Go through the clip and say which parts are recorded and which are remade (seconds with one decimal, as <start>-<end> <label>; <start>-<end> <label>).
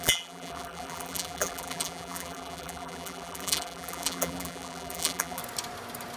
0.0-5.4 remade; 5.4-6.2 recorded